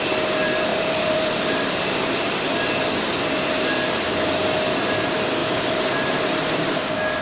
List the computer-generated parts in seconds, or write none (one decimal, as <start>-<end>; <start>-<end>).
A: 0.7-2.5; 5.4-6.8